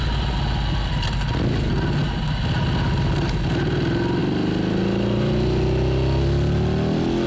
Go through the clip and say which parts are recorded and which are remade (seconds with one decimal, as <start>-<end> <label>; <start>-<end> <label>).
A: 0.0-7.3 recorded